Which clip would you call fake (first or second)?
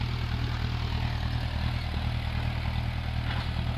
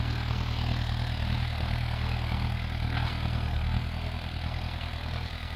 second